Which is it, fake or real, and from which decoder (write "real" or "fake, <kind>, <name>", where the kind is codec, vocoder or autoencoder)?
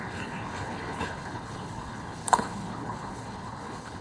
fake, codec, HILCodec